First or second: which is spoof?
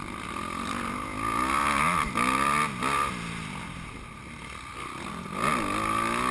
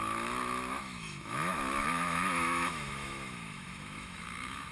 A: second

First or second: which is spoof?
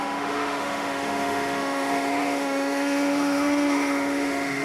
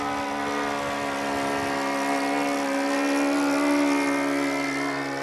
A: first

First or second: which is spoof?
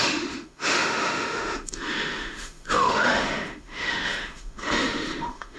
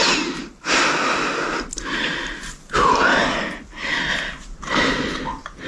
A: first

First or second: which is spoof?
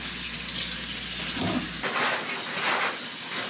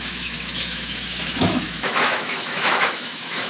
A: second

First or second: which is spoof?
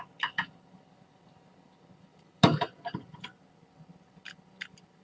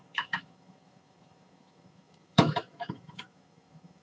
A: second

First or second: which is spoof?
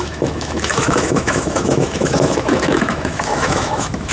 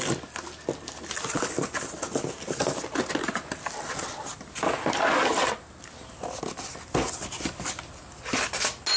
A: first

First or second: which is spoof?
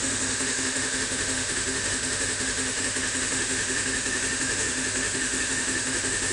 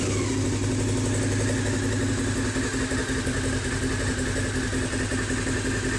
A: first